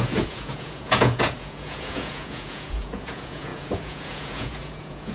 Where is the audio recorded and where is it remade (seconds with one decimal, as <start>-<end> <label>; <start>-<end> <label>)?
0.0-5.1 remade